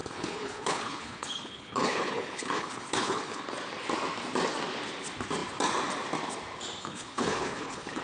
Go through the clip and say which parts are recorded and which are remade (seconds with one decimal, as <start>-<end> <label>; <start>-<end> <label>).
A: 0.0-3.4 remade; 3.4-6.8 recorded; 6.8-8.0 remade